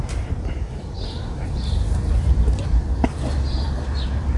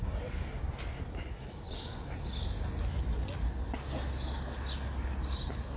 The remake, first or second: first